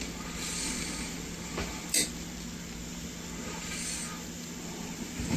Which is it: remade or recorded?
recorded